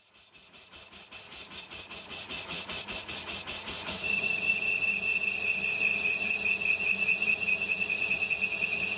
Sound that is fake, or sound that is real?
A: fake